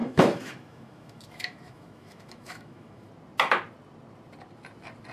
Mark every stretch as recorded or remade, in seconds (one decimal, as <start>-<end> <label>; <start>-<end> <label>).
0.0-3.1 remade; 3.1-5.1 recorded

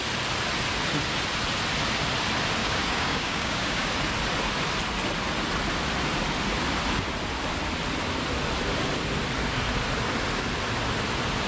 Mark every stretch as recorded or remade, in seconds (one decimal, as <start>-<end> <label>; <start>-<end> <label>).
0.0-2.6 recorded; 2.6-3.9 remade; 3.9-11.5 recorded

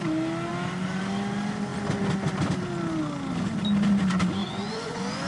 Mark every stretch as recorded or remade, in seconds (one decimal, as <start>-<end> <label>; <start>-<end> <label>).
0.0-4.4 recorded; 4.4-5.3 remade